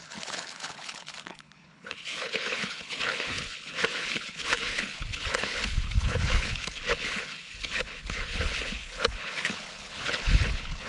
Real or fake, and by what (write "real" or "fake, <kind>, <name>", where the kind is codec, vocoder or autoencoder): fake, codec, HILCodec